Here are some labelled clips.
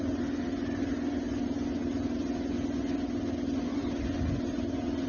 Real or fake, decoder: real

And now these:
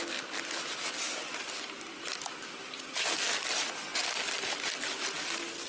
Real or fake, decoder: real